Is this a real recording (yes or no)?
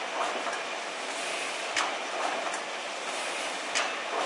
yes